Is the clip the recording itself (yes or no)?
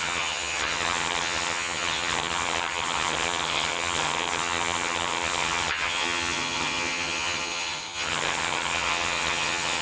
no